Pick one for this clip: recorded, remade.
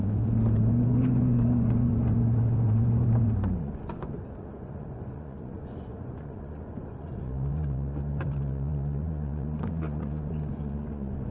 remade